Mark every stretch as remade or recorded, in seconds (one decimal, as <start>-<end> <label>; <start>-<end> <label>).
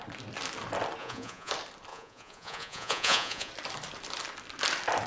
0.0-1.0 recorded; 1.0-1.5 remade; 1.5-1.9 recorded; 1.9-3.5 remade; 3.5-5.1 recorded